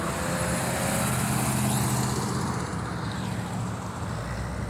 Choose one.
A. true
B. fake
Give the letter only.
A